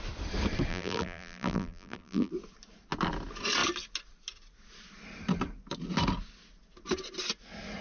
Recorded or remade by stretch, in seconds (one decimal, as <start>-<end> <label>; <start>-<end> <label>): 0.0-0.7 recorded; 0.7-2.3 remade; 2.3-7.8 recorded